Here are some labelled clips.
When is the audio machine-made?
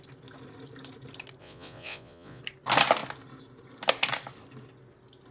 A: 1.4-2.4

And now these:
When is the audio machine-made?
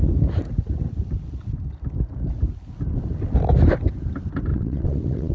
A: 4.5-5.3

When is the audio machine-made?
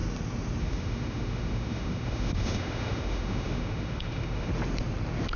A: 0.6-4.5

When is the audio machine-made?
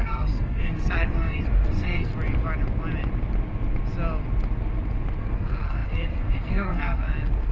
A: 0.0-2.1; 5.2-7.5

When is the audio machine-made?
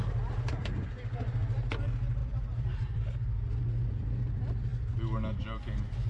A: 2.2-3.0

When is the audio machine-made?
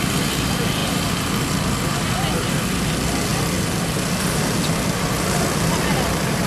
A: none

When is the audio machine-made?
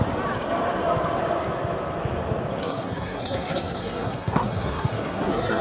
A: 2.6-5.6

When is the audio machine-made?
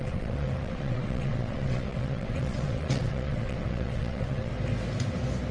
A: 0.0-4.5